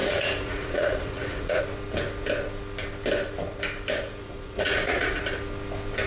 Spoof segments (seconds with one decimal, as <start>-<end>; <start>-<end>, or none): 0.0-1.6; 4.2-5.2